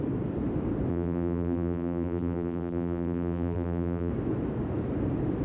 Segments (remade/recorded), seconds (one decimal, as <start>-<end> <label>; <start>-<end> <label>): 0.0-0.9 recorded; 0.9-4.1 remade; 4.1-5.4 recorded